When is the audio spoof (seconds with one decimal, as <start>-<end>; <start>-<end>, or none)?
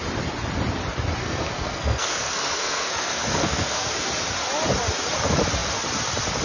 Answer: 1.2-3.9